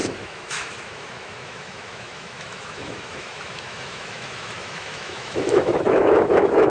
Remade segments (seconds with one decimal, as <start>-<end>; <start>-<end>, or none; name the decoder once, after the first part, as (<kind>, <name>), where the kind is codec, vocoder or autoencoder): 0.0-6.7 (autoencoder, DAC-VAE)